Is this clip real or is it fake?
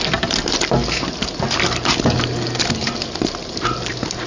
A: real